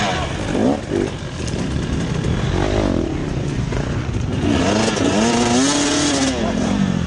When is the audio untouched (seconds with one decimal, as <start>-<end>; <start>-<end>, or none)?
0.0-3.2; 4.6-7.1